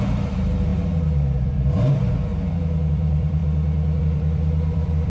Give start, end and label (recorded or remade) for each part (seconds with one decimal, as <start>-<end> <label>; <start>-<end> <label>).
0.0-2.3 remade; 2.3-2.9 recorded; 2.9-3.4 remade; 3.4-4.0 recorded; 4.0-5.1 remade